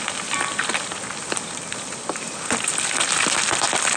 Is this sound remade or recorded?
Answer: recorded